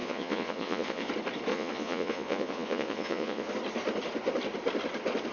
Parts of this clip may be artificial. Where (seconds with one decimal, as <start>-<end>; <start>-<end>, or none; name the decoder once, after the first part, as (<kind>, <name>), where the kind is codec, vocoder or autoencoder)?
0.0-1.1 (vocoder, Vocos); 1.5-3.5

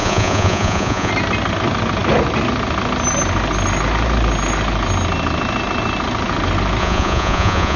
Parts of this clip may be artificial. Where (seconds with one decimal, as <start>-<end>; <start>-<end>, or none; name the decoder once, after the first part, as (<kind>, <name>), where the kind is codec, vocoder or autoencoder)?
0.0-1.1 (vocoder, Vocos); 6.8-7.8

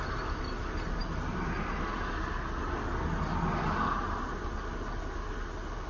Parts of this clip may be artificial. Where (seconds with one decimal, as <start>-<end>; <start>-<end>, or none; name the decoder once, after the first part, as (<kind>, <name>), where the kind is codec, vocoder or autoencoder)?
none

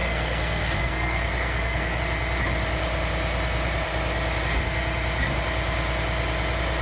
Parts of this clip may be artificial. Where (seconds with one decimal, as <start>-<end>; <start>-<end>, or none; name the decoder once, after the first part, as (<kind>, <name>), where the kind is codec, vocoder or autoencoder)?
0.0-2.0 (codec, SNAC)